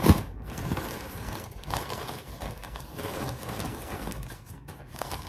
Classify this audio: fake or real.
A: fake